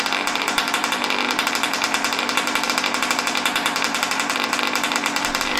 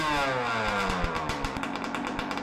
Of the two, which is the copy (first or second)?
first